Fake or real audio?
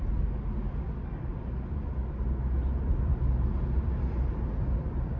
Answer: real